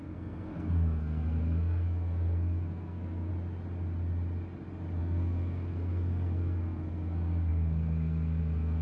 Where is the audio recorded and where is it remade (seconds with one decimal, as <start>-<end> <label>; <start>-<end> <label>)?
0.0-3.3 remade; 3.3-5.0 recorded; 5.0-8.8 remade